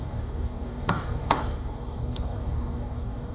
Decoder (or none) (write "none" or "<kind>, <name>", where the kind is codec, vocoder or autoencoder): codec, DAC